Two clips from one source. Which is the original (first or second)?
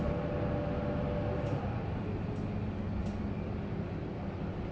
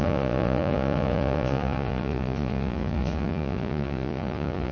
first